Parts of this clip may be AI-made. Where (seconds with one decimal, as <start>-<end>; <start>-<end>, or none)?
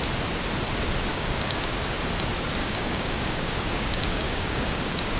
1.1-1.7; 2.6-5.2